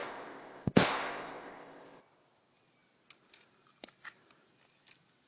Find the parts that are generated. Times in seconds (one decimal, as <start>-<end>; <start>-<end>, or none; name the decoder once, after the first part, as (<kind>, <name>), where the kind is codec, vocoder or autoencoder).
0.0-2.0 (codec, ZipCodec)